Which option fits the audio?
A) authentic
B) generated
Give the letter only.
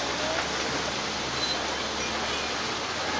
A